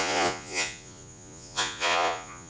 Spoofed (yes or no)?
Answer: yes